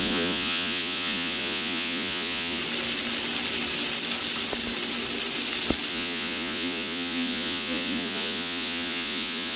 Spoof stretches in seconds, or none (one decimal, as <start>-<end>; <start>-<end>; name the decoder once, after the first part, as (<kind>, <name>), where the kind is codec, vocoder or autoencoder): 0.0-2.6 (vocoder, Vocos); 5.9-9.6